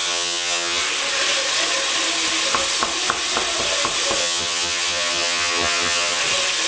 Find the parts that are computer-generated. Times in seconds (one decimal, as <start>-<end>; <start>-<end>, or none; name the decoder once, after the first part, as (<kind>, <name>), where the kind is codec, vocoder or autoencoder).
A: 0.0-0.8 (vocoder, HiFi-GAN); 4.2-6.2